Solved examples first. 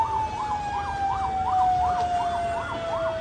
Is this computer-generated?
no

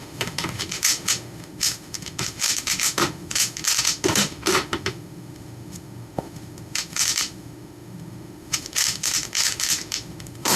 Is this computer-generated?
yes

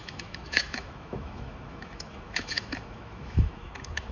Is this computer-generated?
yes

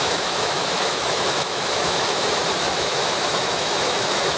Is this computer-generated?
yes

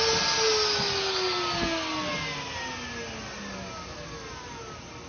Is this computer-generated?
no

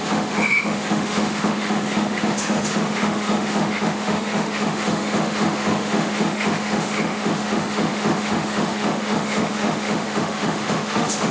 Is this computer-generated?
yes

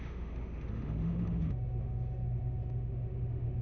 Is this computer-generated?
yes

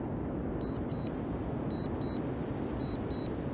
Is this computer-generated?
no